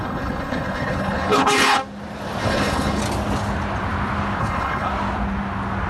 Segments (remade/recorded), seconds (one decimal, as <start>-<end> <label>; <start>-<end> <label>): 0.0-1.8 remade; 1.8-2.4 recorded; 2.4-3.0 remade; 3.0-4.4 recorded; 4.4-4.9 remade; 4.9-5.9 recorded